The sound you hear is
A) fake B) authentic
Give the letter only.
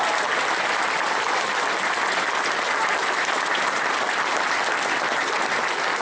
B